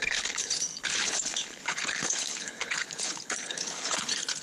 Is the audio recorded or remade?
remade